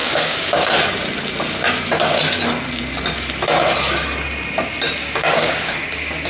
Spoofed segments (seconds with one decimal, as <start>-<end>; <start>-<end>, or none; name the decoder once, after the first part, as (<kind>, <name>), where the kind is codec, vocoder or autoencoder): 0.0-0.7 (codec, DAC); 5.0-6.3